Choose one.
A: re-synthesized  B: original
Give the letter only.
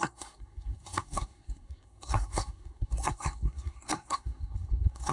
A